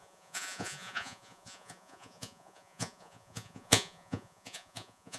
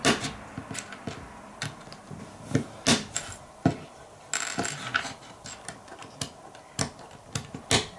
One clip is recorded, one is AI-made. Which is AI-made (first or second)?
first